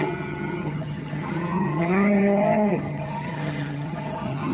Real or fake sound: fake